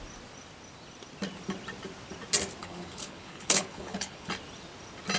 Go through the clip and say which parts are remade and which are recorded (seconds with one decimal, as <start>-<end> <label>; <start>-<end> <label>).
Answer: 0.0-2.6 recorded; 2.6-4.3 remade; 4.3-5.2 recorded